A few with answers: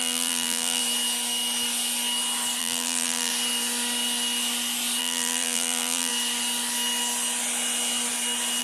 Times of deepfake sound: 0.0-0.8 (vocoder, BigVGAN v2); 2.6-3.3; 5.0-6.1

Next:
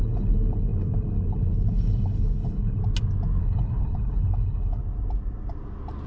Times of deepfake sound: 0.0-2.8 (codec, HILCodec); 3.4-4.8

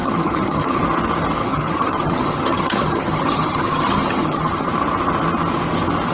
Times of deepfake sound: 0.0-0.8 (vocoder, HiFi-GAN); 1.4-4.7

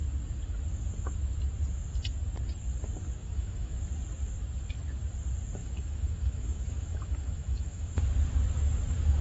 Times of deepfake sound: 3.2-3.8 (autoencoder, DAC-VAE); 5.6-8.0